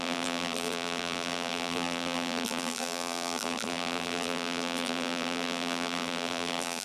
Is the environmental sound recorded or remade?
remade